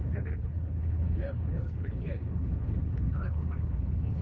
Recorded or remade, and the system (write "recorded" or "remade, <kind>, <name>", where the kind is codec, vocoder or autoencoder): remade, codec, HILCodec